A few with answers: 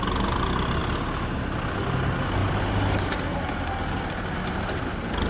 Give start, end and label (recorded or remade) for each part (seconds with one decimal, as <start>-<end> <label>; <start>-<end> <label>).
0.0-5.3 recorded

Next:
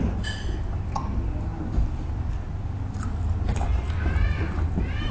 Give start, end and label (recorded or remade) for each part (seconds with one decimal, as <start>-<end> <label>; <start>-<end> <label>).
0.0-5.1 recorded

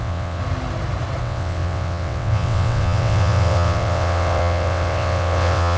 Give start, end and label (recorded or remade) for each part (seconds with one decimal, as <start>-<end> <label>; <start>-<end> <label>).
0.0-0.4 remade; 0.4-1.2 recorded; 1.2-5.8 remade